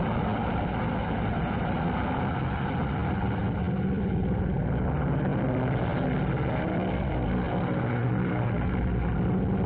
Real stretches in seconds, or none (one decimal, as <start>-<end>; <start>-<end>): 0.0-9.7